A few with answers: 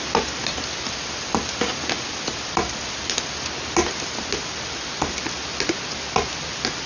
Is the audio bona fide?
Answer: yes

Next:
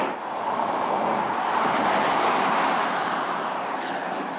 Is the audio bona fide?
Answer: no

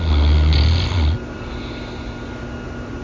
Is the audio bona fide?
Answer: yes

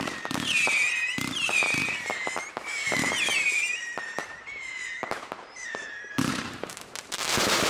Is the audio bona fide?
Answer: no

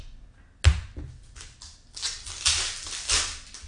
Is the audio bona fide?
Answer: yes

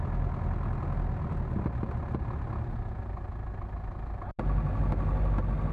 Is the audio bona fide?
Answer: yes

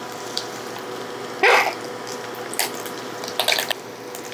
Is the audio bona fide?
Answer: yes